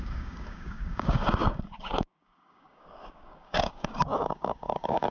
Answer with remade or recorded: remade